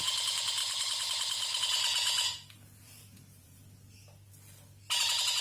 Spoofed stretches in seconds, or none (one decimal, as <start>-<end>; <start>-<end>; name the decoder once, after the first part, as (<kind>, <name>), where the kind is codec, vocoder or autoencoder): 0.0-0.6 (vocoder, Vocos); 1.6-3.6; 5.0-5.4